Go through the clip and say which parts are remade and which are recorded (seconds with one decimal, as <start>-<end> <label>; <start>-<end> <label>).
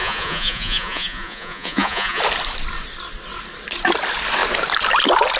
0.0-2.2 remade; 2.2-5.4 recorded